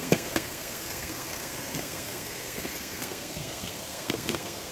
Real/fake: fake